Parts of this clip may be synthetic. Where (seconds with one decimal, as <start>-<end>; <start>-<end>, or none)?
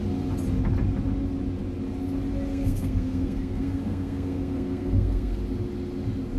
2.5-5.4